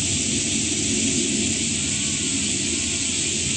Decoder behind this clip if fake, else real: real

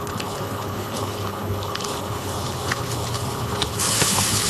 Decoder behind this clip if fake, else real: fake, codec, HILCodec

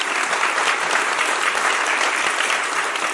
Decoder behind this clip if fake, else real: fake, vocoder, BigVGAN v2